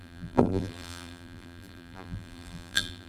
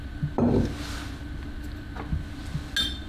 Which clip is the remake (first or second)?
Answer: first